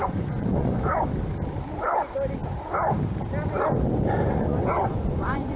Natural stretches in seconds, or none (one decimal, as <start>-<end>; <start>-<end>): 1.0-4.3